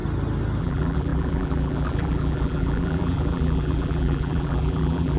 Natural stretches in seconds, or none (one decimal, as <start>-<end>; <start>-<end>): 0.0-0.6